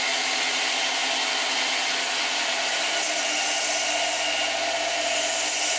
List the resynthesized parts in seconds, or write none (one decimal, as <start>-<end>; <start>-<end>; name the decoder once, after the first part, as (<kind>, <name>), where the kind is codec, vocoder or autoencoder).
none

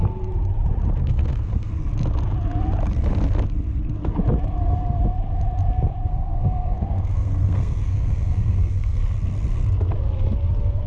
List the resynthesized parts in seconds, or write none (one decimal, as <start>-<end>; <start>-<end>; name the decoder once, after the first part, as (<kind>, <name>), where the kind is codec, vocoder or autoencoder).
1.0-1.7 (codec, SNAC); 6.1-9.0

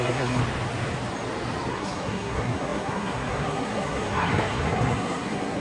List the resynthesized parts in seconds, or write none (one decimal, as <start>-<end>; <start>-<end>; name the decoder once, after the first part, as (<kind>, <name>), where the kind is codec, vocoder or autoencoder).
0.0-0.4 (codec, SNAC); 1.7-5.6

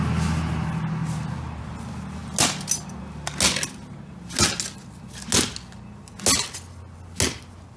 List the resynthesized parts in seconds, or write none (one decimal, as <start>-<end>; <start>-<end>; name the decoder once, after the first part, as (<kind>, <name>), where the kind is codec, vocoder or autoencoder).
none

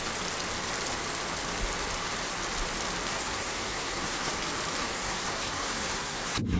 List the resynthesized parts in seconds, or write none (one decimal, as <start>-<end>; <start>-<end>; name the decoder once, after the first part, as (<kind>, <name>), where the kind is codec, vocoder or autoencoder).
3.1-4.3 (codec, SNAC); 4.8-6.6